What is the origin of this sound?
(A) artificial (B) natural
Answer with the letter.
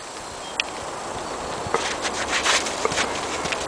B